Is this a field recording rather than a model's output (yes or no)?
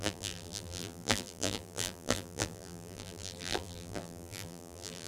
no